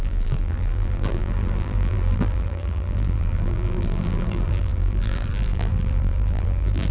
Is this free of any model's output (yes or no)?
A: no